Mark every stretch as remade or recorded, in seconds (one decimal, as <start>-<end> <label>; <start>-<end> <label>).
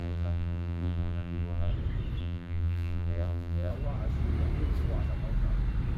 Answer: 0.0-1.7 remade; 1.7-2.2 recorded; 2.2-3.7 remade; 3.7-6.0 recorded